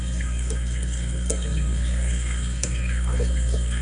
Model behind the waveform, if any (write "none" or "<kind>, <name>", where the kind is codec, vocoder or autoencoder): codec, SNAC